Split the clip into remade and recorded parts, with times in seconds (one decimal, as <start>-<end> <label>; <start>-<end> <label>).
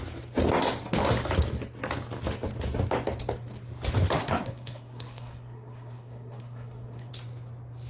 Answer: 0.0-4.2 recorded; 4.2-7.1 remade; 7.1-7.9 recorded